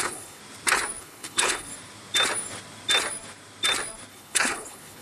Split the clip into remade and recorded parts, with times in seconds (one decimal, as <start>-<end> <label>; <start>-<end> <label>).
0.0-0.4 remade; 0.4-1.0 recorded; 1.0-1.7 remade; 1.7-4.1 recorded; 4.1-5.0 remade